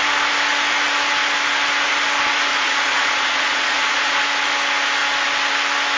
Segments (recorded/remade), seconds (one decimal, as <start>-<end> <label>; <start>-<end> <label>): 0.0-2.5 recorded; 2.5-4.2 remade; 4.2-6.0 recorded